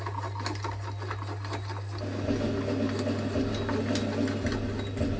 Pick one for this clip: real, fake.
real